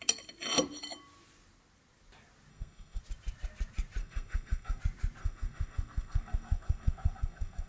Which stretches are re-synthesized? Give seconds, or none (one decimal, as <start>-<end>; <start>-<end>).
2.5-3.0; 4.0-4.8; 5.2-7.7